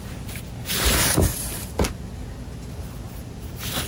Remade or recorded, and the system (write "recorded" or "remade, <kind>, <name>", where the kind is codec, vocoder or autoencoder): recorded